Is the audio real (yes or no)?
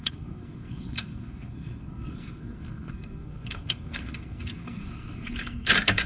no